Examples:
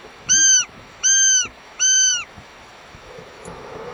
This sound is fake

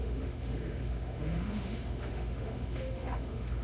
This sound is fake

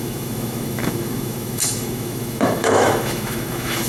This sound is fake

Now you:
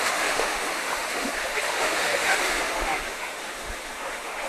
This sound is fake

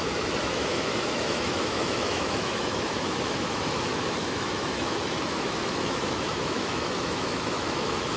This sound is fake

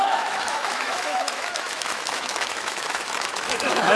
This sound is fake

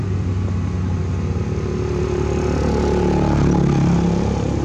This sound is real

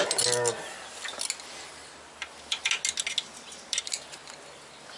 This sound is real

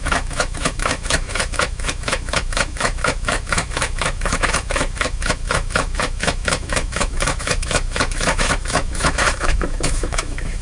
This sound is fake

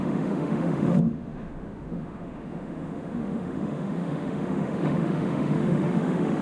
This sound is fake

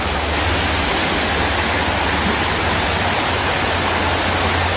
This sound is real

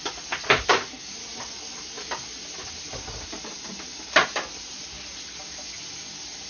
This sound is real